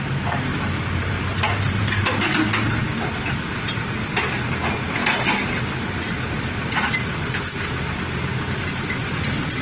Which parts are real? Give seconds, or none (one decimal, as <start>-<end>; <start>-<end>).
0.0-0.5; 2.3-9.6